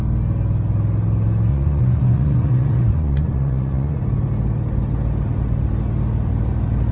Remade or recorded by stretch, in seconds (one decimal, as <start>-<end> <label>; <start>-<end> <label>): 0.0-1.5 recorded; 1.5-4.0 remade; 4.0-6.9 recorded